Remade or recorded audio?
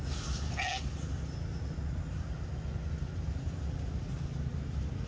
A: recorded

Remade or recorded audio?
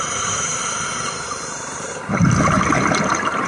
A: remade